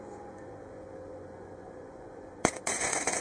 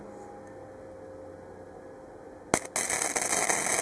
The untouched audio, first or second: second